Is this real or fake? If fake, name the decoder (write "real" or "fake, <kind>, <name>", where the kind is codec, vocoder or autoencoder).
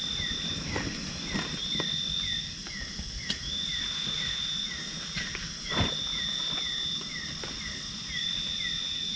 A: real